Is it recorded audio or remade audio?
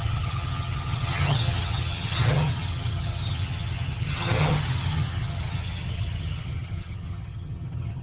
remade